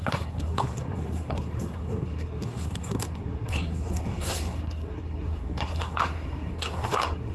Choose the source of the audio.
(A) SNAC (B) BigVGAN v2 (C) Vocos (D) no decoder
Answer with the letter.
A